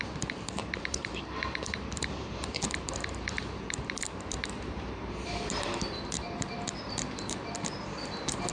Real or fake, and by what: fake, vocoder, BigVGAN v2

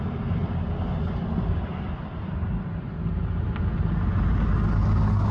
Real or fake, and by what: real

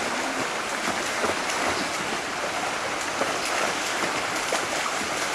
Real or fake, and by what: real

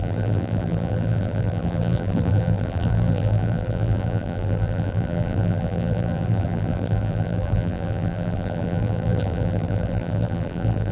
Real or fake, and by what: fake, vocoder, BigVGAN v2